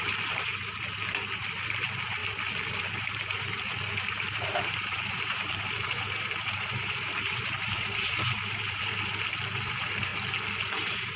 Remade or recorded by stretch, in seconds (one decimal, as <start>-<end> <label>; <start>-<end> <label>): 0.0-2.2 remade; 2.2-2.8 recorded; 2.8-10.1 remade; 10.1-10.7 recorded; 10.7-11.2 remade